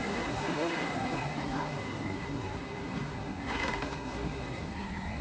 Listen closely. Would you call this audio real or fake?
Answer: fake